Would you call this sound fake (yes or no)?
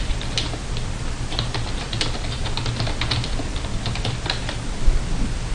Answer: yes